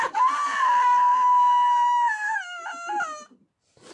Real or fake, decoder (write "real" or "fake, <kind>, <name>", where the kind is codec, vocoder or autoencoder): real